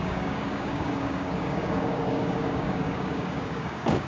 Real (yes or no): no